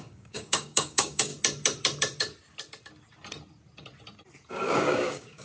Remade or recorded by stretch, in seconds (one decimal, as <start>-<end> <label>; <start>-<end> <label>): 0.0-1.3 remade; 1.3-4.5 recorded; 4.5-5.4 remade